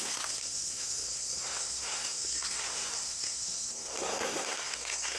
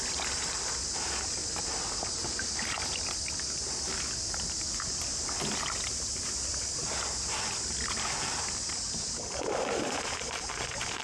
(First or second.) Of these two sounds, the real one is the second